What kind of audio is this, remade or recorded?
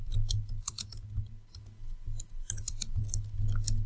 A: recorded